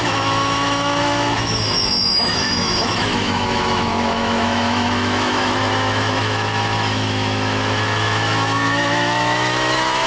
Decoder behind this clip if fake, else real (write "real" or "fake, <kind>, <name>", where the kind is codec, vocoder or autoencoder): fake, autoencoder, DAC-VAE